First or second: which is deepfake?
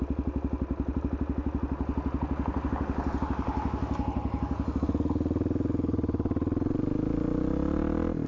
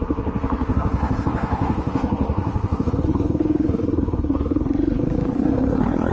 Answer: second